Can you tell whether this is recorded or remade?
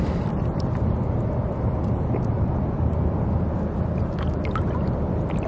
recorded